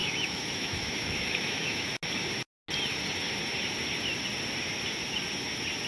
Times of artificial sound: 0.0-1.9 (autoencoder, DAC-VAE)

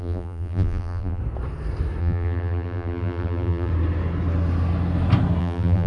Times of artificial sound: 0.0-1.2 (vocoder, BigVGAN v2); 2.0-3.7; 5.4-5.9

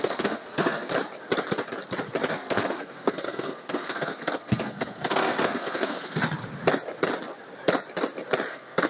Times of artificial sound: 0.0-0.9 (codec, SNAC); 2.3-6.2; 8.5-8.9

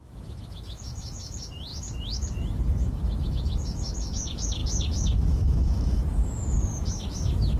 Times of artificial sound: 0.0-7.6 (autoencoder, DAC-VAE)

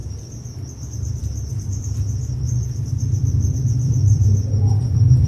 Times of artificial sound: 0.0-1.2 (vocoder, BigVGAN v2); 1.7-5.3

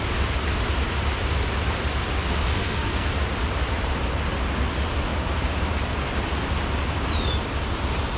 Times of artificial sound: 2.4-3.1 (codec, SNAC)

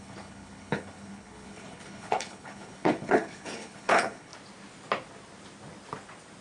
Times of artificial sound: 0.0-4.3 (codec, HILCodec)

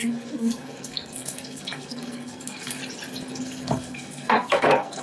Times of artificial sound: 0.0-2.8 (codec, SNAC); 3.3-5.0